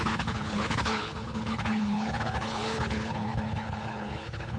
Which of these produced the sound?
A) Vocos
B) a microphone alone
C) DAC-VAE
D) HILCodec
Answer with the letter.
D